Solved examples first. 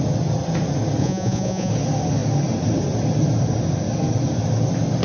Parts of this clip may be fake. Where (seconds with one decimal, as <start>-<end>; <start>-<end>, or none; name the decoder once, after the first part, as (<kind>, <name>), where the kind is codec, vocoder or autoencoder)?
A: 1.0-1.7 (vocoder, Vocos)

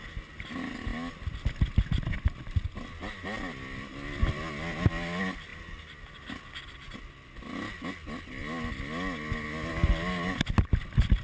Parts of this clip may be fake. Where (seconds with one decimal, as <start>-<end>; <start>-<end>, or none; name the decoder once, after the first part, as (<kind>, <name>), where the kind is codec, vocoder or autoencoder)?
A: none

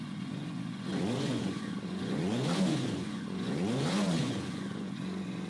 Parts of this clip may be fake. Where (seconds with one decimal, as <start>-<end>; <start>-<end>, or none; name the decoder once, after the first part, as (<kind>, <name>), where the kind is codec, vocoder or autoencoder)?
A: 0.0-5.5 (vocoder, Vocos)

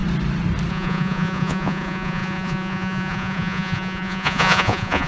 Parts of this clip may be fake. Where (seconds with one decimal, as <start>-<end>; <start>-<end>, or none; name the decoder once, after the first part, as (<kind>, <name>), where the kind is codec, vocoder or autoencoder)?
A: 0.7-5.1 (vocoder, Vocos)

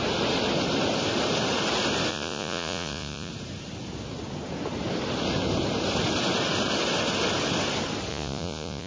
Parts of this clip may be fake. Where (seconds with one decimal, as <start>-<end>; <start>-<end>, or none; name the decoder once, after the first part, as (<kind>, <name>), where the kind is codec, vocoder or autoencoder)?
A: 2.1-3.3 (vocoder, Vocos); 8.1-8.9